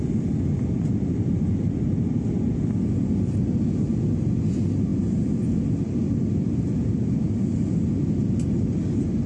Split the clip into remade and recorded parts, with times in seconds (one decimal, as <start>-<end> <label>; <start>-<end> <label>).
0.0-9.3 recorded